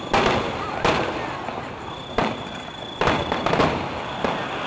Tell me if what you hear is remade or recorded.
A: recorded